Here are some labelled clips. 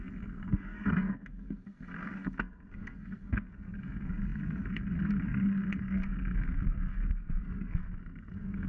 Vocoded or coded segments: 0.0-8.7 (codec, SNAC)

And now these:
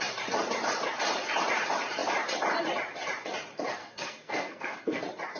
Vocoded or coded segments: 3.8-5.0 (codec, SNAC)

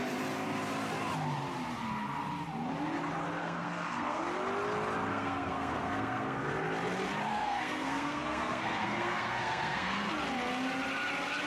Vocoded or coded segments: 3.4-4.2 (codec, SNAC); 5.1-6.5; 7.3-10.1

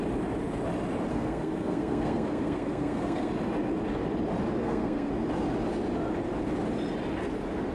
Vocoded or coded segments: 1.1-3.3 (codec, SNAC); 4.6-5.1

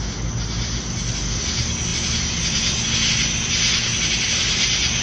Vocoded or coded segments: none

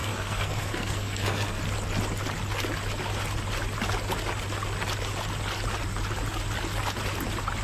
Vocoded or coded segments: 0.0-1.6 (codec, SNAC)

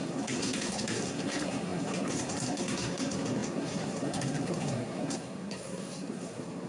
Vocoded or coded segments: 0.0-6.7 (codec, SNAC)

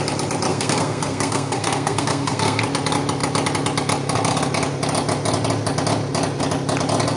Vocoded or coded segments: 0.5-2.6 (codec, SNAC)